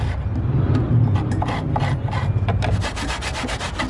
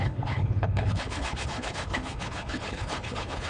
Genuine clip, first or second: first